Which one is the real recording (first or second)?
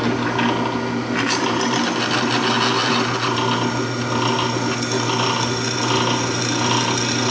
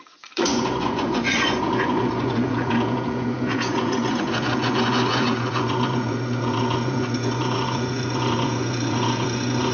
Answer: first